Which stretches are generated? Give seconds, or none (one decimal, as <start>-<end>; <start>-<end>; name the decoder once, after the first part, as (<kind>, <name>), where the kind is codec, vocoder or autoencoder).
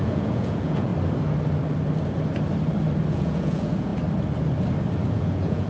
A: 0.0-0.9 (vocoder, Vocos); 3.1-3.9; 5.1-5.7